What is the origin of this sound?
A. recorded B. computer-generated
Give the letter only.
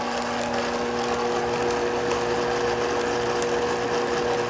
A